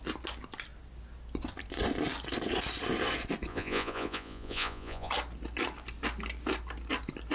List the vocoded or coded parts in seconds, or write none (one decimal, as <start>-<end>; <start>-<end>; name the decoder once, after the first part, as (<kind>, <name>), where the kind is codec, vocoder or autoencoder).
3.5-5.1 (vocoder, Vocos)